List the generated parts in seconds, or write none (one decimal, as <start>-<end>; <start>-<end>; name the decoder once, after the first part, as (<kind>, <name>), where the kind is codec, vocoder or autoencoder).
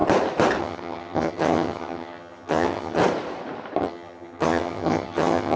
0.6-3.0 (vocoder, HiFi-GAN); 3.8-5.6